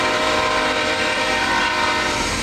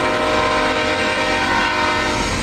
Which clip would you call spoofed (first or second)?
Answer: first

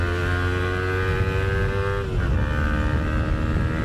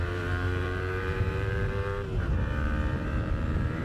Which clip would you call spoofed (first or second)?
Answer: second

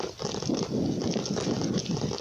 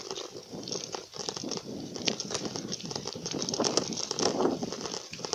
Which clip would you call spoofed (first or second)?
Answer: second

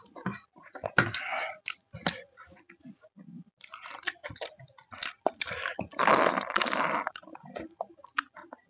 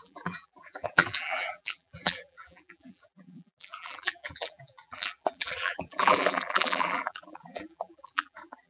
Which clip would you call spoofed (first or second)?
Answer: second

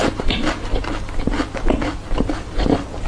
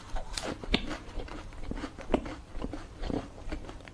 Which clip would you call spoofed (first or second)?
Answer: second